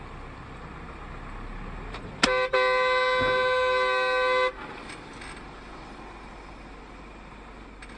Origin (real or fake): real